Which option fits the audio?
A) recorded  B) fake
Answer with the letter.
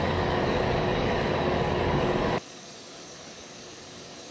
B